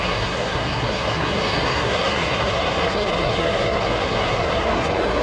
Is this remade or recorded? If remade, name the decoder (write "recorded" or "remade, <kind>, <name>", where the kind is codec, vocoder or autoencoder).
remade, codec, SNAC